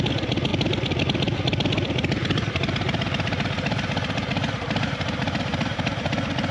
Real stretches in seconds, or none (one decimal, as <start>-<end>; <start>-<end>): 0.0-2.2; 6.1-6.5